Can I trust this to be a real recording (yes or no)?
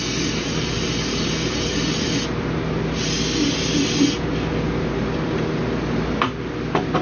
yes